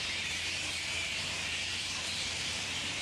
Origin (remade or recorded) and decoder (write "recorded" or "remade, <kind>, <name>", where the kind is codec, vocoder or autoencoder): remade, vocoder, BigVGAN v2